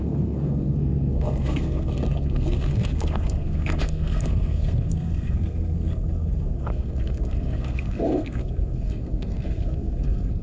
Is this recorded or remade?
remade